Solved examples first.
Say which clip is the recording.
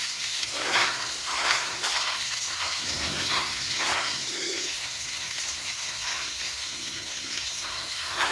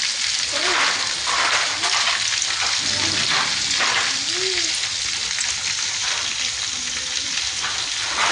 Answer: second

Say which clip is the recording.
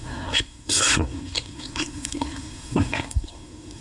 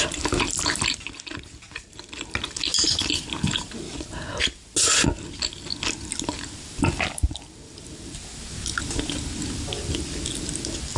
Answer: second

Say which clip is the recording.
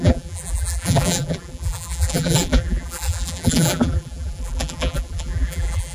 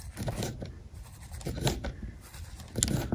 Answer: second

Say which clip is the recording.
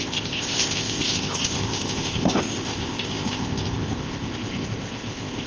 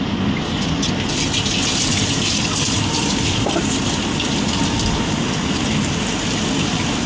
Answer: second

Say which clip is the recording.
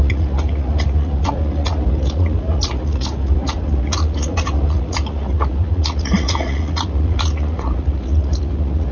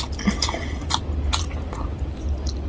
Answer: second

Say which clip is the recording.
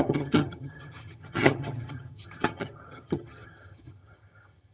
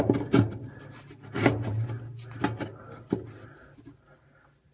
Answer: second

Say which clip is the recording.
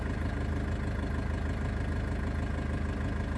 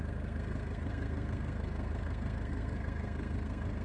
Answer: first